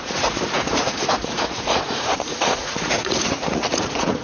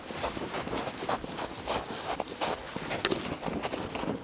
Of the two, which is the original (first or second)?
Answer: second